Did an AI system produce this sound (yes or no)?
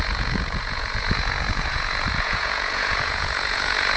yes